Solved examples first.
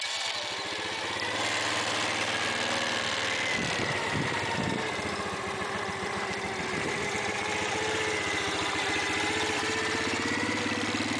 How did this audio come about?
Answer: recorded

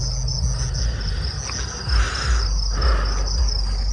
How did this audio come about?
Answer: recorded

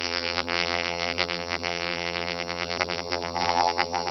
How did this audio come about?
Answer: remade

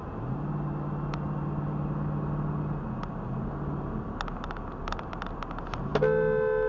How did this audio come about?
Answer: recorded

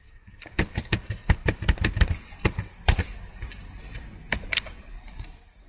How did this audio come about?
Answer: remade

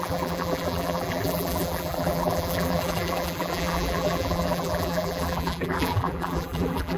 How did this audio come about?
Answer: remade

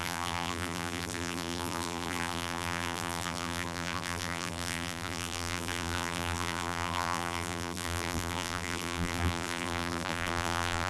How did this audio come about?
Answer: remade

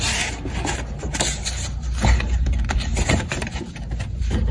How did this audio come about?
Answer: remade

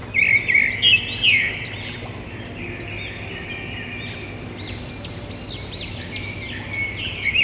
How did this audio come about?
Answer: recorded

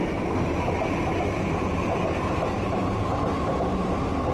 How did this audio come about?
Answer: remade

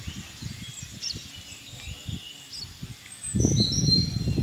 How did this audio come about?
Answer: recorded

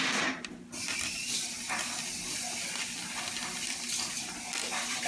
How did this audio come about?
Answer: recorded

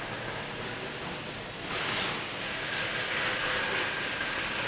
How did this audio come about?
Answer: recorded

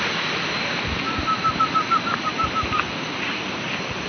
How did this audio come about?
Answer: recorded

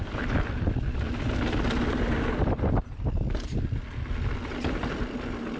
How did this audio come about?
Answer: recorded